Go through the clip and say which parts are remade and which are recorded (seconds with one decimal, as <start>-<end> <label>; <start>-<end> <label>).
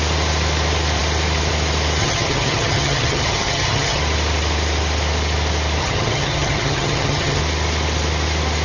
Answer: 0.0-2.0 recorded; 2.0-4.0 remade; 4.0-5.8 recorded; 5.8-7.4 remade; 7.4-8.6 recorded